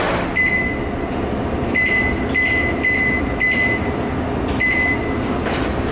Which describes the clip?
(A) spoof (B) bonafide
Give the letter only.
B